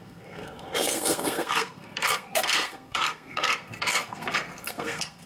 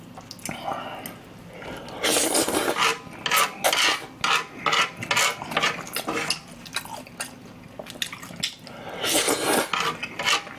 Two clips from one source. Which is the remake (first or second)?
first